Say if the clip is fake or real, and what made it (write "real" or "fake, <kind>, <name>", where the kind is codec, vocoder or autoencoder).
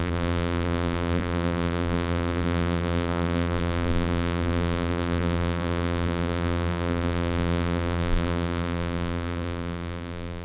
fake, vocoder, BigVGAN v2